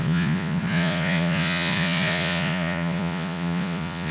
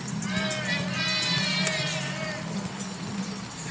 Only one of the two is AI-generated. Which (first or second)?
first